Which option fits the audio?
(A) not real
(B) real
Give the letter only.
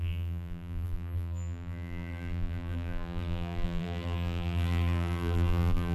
A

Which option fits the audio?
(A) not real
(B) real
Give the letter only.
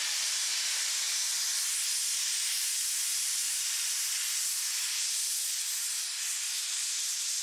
B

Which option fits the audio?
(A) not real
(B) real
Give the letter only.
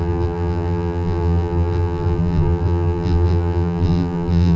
A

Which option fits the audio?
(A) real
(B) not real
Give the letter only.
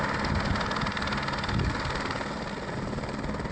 A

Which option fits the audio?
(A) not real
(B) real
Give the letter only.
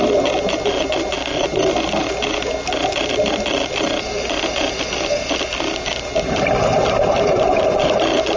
B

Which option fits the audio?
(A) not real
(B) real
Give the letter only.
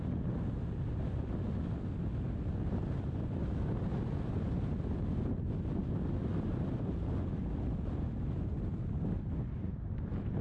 B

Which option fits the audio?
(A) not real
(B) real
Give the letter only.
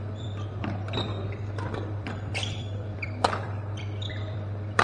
A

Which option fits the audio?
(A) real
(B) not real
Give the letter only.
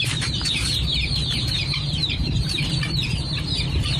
B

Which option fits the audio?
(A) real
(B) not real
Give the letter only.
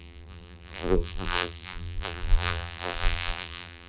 B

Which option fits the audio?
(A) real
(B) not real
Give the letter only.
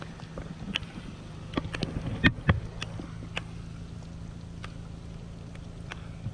A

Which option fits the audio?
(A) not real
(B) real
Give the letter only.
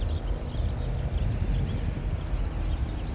B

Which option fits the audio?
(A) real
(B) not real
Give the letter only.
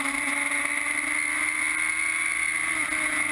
A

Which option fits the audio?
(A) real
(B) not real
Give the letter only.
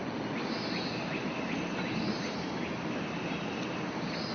A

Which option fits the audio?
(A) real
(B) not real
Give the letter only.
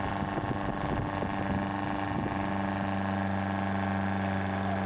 A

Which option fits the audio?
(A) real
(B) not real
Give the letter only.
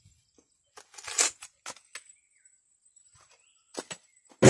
A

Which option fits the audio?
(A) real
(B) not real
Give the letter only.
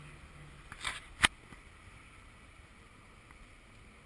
A